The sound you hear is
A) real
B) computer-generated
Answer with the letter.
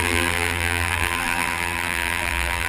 B